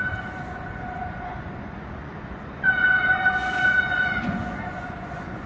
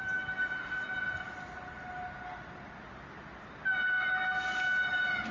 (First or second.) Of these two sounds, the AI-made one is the first